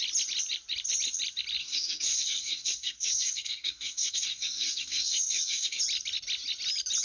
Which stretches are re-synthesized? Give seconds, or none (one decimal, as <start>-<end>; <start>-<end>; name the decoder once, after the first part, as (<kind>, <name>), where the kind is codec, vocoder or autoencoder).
1.6-5.8 (codec, SNAC)